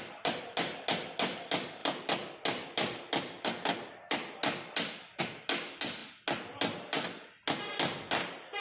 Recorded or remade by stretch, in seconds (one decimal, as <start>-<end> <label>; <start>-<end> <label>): 0.0-8.6 recorded